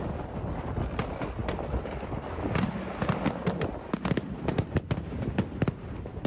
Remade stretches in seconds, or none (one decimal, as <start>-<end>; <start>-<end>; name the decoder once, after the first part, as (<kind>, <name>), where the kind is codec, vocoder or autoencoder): none